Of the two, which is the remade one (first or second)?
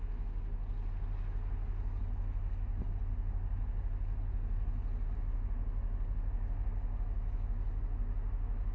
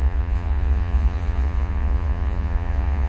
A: second